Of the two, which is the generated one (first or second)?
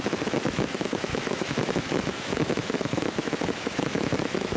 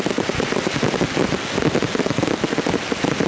first